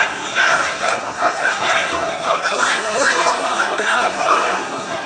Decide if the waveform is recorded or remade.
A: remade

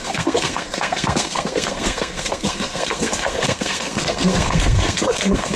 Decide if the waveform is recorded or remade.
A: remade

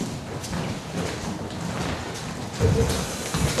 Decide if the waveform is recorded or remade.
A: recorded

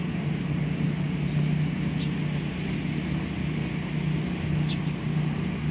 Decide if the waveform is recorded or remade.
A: recorded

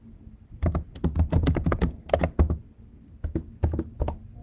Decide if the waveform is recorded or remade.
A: recorded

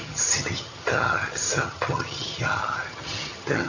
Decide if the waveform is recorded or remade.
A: remade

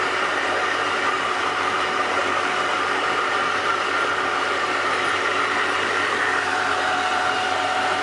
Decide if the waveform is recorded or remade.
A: remade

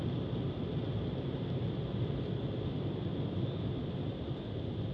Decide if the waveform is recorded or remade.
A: recorded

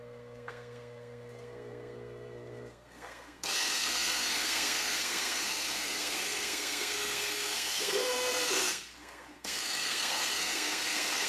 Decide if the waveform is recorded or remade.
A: remade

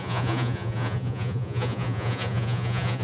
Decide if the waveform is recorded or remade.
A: remade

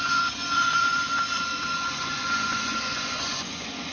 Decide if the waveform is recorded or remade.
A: remade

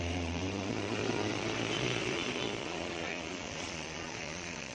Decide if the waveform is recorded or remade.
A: remade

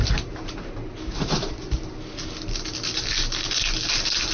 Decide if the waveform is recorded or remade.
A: recorded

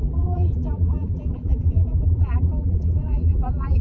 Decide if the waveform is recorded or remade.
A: remade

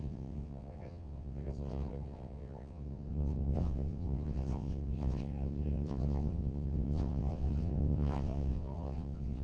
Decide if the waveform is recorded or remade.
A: remade